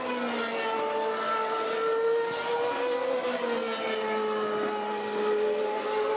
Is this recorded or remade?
recorded